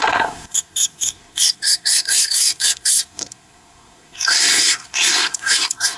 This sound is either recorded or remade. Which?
remade